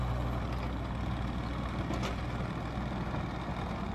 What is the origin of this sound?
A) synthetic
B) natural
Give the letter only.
B